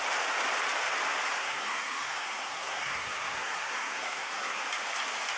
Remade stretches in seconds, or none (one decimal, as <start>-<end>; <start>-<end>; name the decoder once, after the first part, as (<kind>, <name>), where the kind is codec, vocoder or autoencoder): 1.4-4.6 (codec, SNAC)